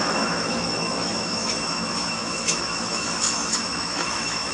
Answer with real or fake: fake